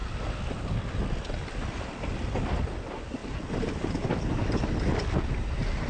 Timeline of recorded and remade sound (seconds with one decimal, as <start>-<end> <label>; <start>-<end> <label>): 0.0-5.9 recorded